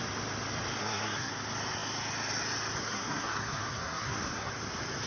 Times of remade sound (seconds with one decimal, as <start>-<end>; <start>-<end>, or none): 0.8-1.3; 2.8-4.5